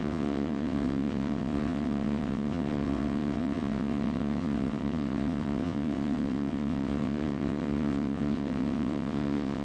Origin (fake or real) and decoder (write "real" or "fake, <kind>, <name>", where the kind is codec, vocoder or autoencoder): fake, vocoder, WaveNeXt